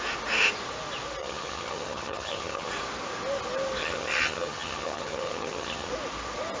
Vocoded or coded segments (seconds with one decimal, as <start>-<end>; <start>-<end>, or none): 1.2-2.7; 3.8-5.9